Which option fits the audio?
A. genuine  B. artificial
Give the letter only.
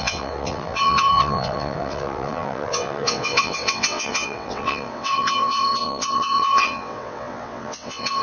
B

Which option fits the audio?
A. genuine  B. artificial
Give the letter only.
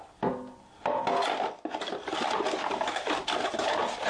A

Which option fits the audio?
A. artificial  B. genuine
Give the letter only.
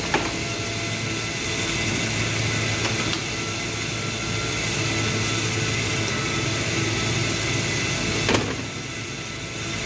B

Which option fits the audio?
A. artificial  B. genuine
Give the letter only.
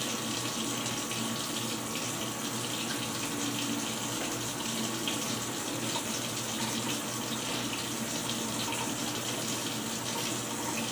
B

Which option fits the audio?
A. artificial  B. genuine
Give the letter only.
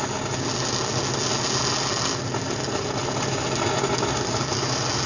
B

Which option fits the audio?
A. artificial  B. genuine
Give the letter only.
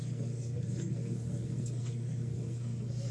A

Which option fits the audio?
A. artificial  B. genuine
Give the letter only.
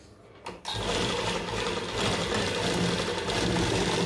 B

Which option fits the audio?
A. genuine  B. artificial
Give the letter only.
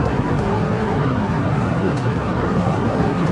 B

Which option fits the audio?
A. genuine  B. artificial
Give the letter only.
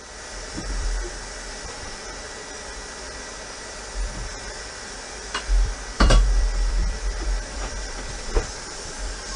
B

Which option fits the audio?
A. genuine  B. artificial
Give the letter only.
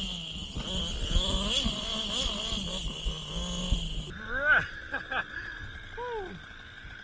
A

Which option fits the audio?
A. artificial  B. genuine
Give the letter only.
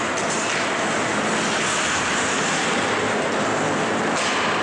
B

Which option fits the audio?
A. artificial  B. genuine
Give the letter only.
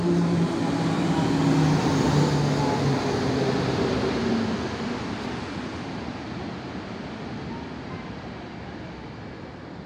B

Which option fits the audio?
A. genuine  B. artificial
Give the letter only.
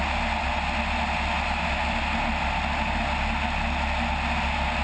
A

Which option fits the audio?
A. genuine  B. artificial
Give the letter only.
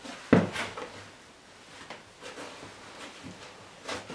A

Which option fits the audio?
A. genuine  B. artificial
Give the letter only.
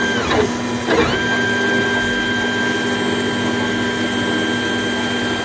A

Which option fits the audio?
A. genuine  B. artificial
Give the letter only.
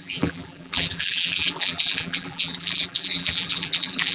B